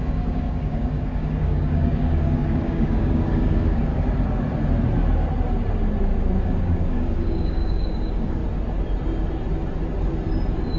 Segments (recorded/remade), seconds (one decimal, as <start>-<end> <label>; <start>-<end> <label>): 0.0-3.9 remade; 3.9-6.4 recorded; 6.4-8.4 remade; 8.4-10.8 recorded